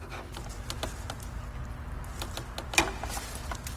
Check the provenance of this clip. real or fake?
real